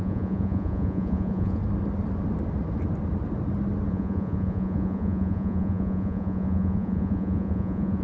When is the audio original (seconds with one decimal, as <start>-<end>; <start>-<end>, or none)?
1.6-3.9